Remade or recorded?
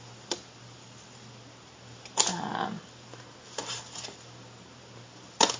recorded